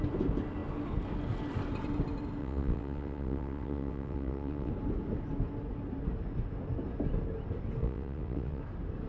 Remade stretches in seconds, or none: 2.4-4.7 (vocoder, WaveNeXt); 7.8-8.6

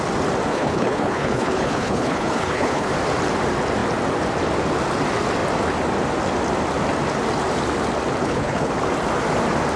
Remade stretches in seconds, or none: 0.5-2.9 (codec, HILCodec); 8.2-8.7